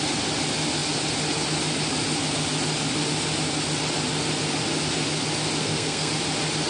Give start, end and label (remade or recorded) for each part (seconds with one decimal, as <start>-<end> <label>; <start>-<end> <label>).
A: 0.0-5.6 recorded; 5.6-6.1 remade; 6.1-6.7 recorded